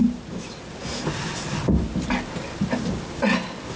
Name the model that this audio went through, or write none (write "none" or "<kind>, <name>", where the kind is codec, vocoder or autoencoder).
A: none